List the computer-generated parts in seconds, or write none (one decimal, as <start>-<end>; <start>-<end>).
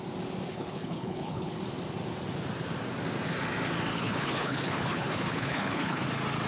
0.5-1.6; 3.9-6.1